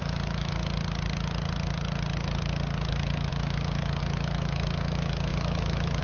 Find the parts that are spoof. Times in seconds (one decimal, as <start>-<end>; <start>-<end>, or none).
0.0-0.6; 2.9-6.0